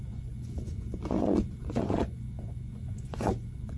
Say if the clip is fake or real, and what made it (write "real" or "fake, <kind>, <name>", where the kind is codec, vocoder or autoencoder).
fake, vocoder, Vocos